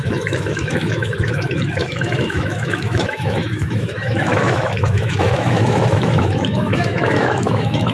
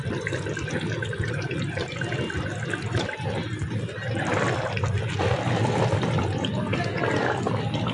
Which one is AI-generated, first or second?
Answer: first